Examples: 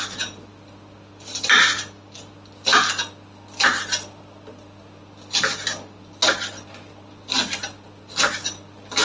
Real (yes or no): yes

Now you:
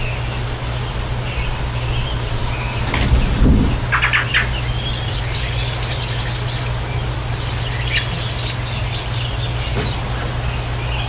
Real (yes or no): yes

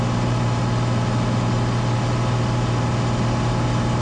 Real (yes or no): yes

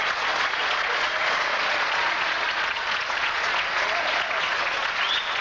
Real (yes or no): no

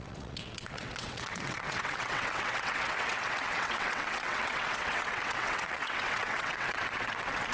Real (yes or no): no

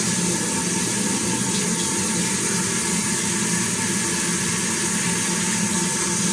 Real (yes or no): yes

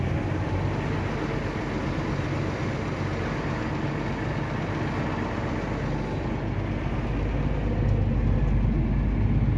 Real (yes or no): yes